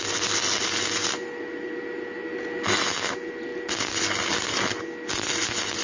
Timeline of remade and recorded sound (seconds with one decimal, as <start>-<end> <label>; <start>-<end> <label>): 0.0-5.8 recorded